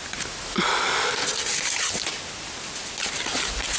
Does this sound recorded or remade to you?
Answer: recorded